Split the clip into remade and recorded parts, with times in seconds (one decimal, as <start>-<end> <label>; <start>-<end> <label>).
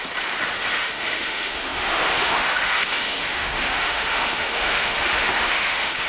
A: 0.0-0.7 recorded; 0.7-6.1 remade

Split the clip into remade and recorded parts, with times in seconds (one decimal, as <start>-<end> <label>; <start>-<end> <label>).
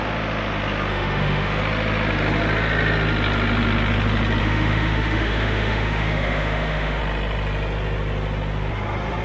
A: 0.0-0.9 recorded; 0.9-1.6 remade; 1.6-4.4 recorded; 4.4-7.0 remade; 7.0-9.2 recorded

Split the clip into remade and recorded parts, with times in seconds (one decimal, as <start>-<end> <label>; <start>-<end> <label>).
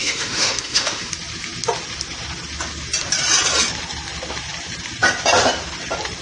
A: 0.0-1.1 remade; 1.1-6.2 recorded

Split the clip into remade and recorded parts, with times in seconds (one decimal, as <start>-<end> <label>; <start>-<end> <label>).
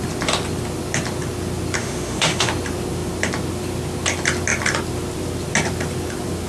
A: 0.0-1.8 recorded; 1.8-2.5 remade; 2.5-6.5 recorded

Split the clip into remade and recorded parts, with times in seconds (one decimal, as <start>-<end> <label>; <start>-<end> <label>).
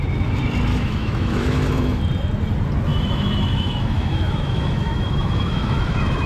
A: 0.0-0.7 recorded; 0.7-2.0 remade; 2.0-2.9 recorded; 2.9-6.3 remade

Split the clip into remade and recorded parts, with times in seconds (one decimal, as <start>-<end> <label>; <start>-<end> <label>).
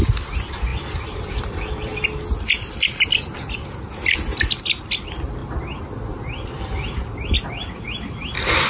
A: 0.0-8.7 recorded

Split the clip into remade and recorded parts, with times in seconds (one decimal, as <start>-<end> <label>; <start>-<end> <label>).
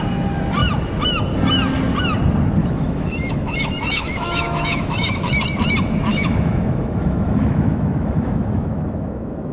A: 0.0-2.6 recorded; 2.6-5.3 remade; 5.3-6.1 recorded; 6.1-9.5 remade